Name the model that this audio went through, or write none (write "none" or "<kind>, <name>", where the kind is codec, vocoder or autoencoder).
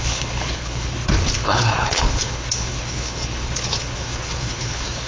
codec, HILCodec